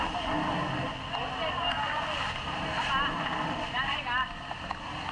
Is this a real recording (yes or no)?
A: yes